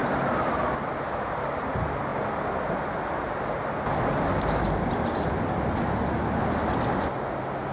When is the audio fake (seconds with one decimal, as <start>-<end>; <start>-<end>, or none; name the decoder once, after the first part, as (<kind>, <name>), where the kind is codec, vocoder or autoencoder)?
none

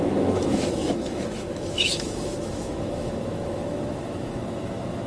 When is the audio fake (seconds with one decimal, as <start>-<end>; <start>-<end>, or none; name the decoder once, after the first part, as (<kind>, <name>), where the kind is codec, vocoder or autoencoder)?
0.0-5.1 (autoencoder, DAC-VAE)

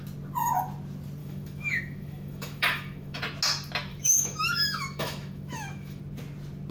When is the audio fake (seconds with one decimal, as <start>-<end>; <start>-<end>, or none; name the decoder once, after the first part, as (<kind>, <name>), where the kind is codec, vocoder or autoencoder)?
1.2-3.2 (autoencoder, DAC-VAE); 3.9-6.0

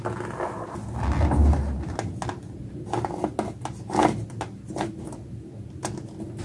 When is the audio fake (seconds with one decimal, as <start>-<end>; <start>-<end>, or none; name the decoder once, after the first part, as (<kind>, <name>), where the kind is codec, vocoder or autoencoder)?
none

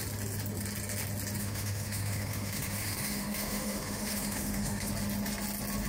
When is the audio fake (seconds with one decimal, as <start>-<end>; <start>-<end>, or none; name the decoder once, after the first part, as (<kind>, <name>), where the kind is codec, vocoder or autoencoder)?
1.4-4.9 (autoencoder, DAC-VAE)

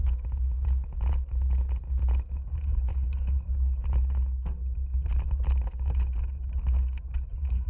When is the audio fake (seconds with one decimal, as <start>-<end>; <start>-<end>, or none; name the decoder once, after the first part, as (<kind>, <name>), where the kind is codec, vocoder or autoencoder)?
none

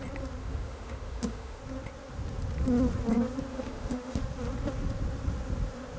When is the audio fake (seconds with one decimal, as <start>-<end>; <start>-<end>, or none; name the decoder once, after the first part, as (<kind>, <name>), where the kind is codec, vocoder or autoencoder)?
0.4-1.6 (autoencoder, DAC-VAE); 3.5-4.2

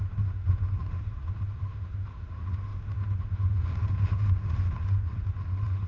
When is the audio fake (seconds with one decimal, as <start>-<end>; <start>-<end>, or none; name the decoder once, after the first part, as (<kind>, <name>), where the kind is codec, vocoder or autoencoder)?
0.0-5.9 (autoencoder, DAC-VAE)